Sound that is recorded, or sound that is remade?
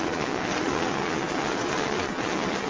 remade